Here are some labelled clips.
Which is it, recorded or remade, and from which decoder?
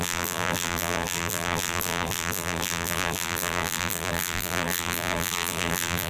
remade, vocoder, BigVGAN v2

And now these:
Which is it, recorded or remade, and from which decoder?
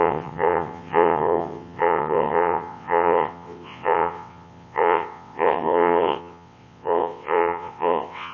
remade, vocoder, WaveNeXt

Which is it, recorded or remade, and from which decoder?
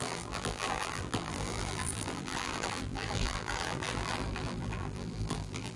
remade, vocoder, BigVGAN v2